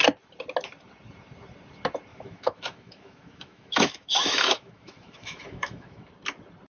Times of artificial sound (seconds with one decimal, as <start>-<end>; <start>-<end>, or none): 2.1-6.1